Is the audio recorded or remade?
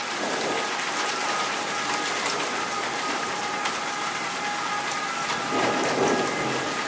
recorded